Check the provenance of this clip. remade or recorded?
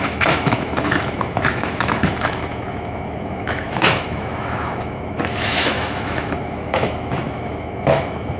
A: remade